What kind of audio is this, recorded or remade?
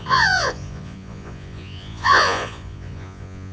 remade